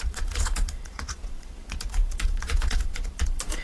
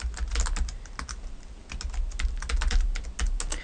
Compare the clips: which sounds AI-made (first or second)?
first